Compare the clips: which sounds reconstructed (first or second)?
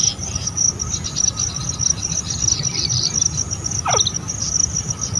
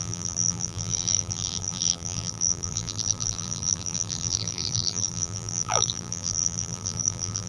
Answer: second